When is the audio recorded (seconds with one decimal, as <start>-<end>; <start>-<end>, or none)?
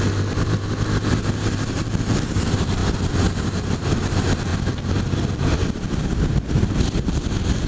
2.8-3.4; 4.5-6.6